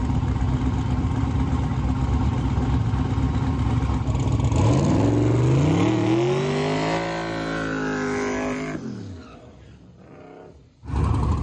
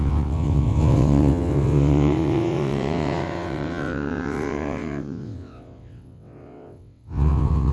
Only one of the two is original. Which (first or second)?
first